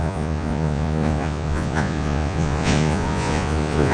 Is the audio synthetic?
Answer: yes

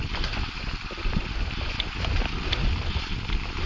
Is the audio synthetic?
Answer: no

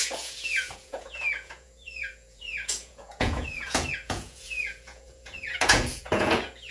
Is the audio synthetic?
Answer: yes